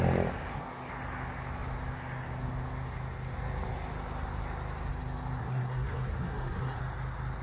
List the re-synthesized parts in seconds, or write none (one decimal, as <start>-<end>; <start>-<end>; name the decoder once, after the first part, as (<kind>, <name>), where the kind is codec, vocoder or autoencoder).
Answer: 5.4-6.8 (codec, SNAC)